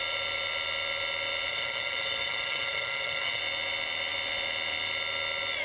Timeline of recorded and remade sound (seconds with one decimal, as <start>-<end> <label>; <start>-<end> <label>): 0.0-1.5 recorded; 1.5-3.4 remade; 3.4-5.6 recorded